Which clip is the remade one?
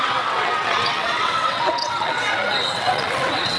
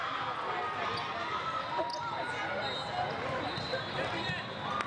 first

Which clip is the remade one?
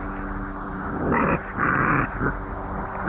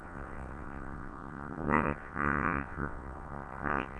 second